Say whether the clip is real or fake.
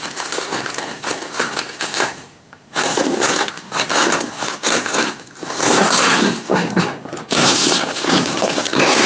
fake